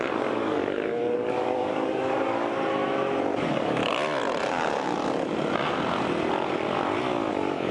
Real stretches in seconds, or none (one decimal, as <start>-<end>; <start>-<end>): 2.5-3.4; 3.8-4.5; 5.0-7.3